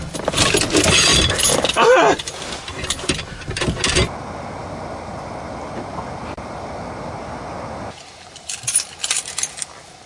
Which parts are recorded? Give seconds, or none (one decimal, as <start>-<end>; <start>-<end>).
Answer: 0.0-10.1